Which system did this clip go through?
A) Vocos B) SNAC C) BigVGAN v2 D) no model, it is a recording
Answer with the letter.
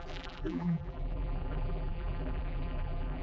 C